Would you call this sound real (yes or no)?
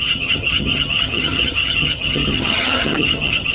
no